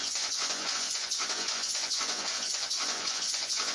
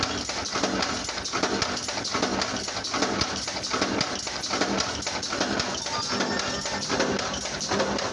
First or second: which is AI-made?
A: first